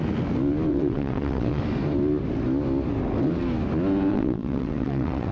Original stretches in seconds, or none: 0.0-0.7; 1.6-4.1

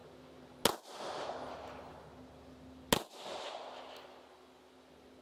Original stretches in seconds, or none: 0.0-5.2

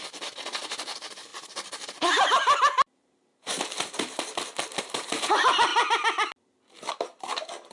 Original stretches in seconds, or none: 5.7-6.9